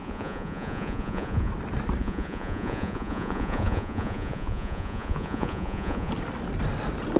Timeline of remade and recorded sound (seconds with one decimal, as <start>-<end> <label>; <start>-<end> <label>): 0.0-1.5 remade; 1.5-2.0 recorded; 2.0-6.1 remade; 6.1-7.2 recorded